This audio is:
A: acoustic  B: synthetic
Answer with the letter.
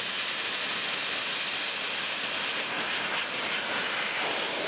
A